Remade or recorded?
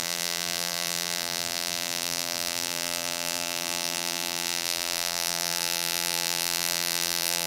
remade